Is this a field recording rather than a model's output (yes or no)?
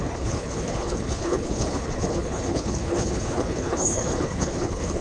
no